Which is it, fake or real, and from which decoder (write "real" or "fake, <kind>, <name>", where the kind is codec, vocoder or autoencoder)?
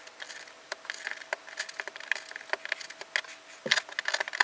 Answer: real